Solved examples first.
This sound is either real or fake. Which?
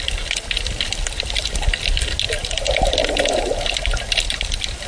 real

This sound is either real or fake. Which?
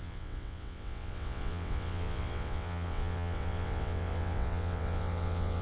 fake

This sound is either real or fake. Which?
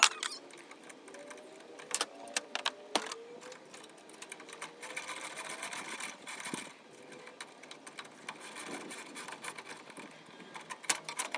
real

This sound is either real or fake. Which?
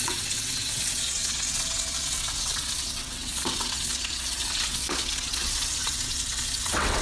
fake